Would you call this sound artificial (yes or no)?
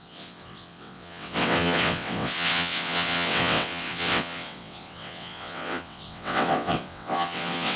yes